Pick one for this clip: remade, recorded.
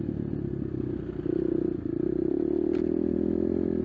recorded